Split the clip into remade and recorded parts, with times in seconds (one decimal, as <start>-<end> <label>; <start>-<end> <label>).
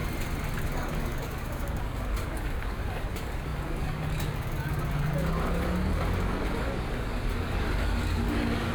0.0-0.6 recorded; 0.6-8.7 remade